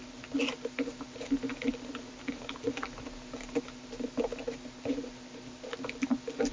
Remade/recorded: recorded